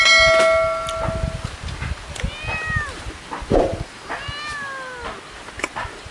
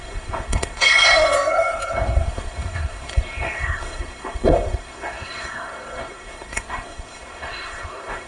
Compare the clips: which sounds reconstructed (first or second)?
second